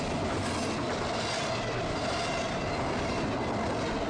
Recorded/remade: recorded